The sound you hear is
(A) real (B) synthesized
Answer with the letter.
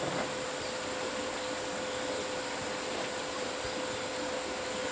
A